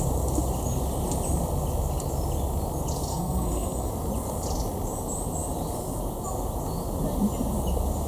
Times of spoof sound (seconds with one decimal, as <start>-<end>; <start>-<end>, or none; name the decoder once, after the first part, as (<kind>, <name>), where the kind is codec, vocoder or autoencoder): 3.1-3.9 (codec, SNAC)